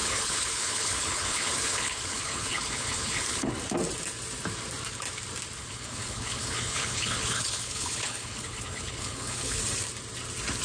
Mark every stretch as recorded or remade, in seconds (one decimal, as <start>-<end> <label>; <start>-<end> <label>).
0.0-3.5 remade; 3.5-5.6 recorded; 5.6-9.6 remade; 9.6-10.6 recorded

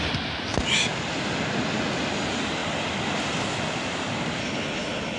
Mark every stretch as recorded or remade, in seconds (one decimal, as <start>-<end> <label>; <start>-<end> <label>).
0.0-4.4 recorded; 4.4-5.2 remade

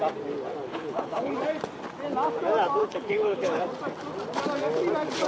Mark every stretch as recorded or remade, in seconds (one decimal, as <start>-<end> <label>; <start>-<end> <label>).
0.0-0.7 recorded; 0.7-1.3 remade; 1.3-2.8 recorded; 2.8-3.6 remade; 3.6-5.3 recorded

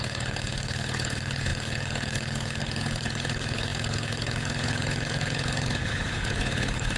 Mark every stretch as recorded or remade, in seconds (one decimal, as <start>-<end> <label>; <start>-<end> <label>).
0.0-7.0 remade

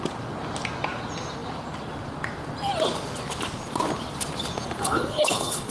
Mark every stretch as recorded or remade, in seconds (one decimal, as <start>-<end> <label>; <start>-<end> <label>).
0.0-4.8 recorded; 4.8-5.7 remade

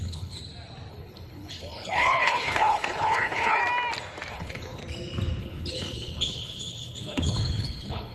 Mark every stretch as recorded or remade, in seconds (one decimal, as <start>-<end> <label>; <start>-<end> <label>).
0.0-0.4 remade; 0.4-0.9 recorded; 0.9-3.6 remade; 3.6-4.3 recorded; 4.3-4.8 remade; 4.8-5.4 recorded; 5.4-8.1 remade